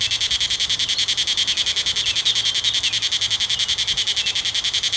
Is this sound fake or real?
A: real